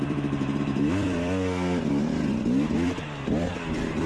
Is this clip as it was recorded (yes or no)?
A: no